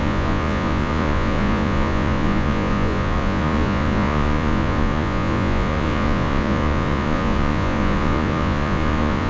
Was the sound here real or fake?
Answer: fake